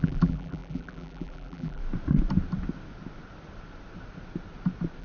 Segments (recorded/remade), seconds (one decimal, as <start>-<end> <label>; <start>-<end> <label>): 0.0-1.8 remade; 1.8-5.0 recorded